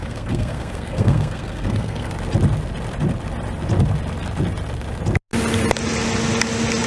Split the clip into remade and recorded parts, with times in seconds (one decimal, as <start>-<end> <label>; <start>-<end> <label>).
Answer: 0.0-2.1 remade; 2.1-6.9 recorded